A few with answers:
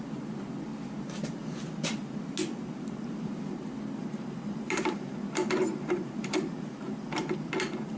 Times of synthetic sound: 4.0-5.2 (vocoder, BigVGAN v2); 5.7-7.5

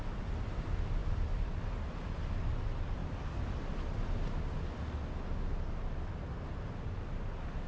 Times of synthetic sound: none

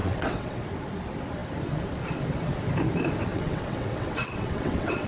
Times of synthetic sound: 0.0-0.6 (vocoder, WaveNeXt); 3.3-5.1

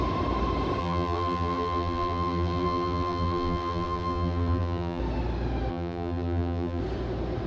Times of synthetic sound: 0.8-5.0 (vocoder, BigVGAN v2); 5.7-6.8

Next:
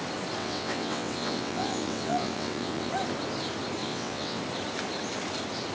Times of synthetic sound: 0.4-2.9 (vocoder, WaveNeXt); 3.8-4.4

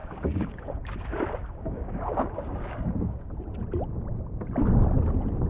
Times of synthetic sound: 0.0-3.3 (codec, DAC)

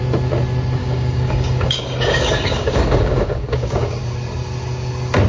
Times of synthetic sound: 0.8-4.0 (codec, DAC)